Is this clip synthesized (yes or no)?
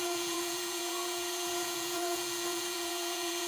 yes